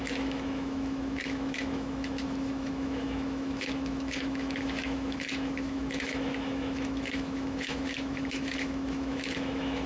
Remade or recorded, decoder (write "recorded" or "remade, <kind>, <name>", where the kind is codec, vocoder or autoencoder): remade, autoencoder, DAC-VAE